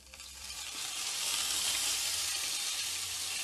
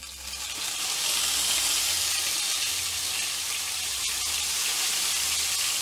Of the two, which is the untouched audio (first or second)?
second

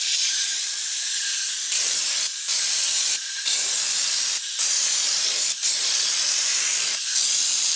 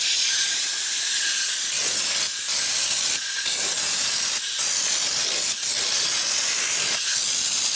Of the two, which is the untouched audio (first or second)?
second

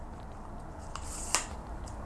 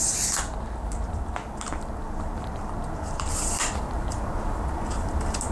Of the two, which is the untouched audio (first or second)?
first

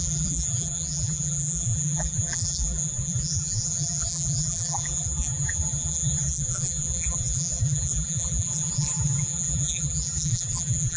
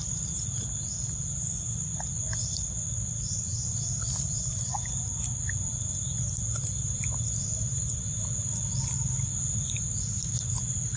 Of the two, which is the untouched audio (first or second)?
second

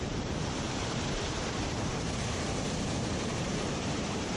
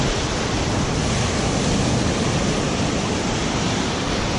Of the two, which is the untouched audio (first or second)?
second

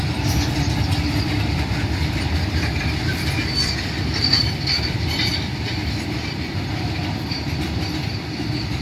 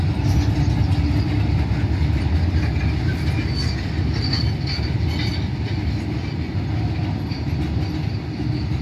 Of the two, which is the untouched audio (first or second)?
second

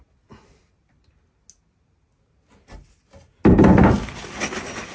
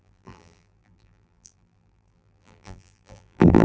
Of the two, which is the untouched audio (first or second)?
first